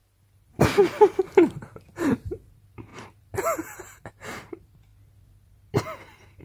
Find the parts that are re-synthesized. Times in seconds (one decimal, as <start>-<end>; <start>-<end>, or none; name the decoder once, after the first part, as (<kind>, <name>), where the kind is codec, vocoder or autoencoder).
1.9-4.9 (vocoder, BigVGAN v2)